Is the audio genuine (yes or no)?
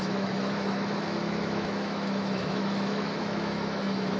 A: no